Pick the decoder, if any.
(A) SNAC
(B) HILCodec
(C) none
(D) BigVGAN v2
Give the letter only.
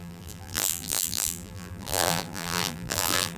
D